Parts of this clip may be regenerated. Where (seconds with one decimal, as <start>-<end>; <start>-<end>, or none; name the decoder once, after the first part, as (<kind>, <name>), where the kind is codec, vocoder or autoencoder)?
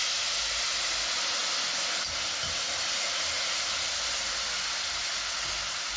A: none